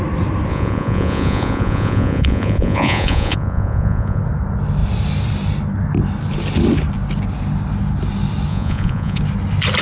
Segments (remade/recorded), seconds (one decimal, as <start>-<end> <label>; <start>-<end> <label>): 0.0-0.5 recorded; 0.5-4.2 remade; 4.2-8.5 recorded; 8.5-9.2 remade; 9.2-9.8 recorded